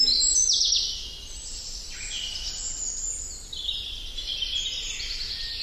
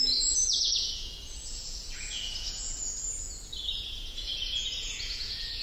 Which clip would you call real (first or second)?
first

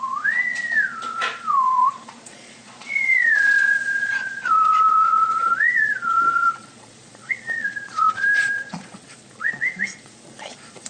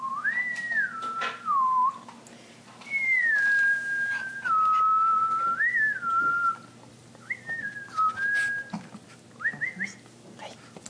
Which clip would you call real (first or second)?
second